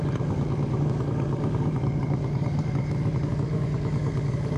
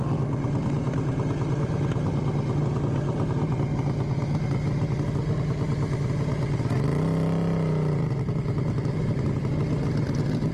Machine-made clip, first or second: first